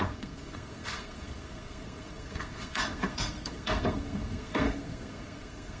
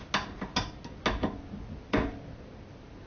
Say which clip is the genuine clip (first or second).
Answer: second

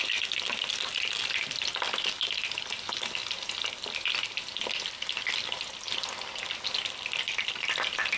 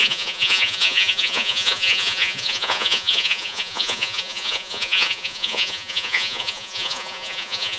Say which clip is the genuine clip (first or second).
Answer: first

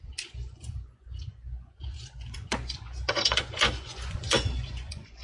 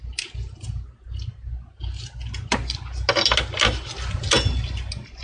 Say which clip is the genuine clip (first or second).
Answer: second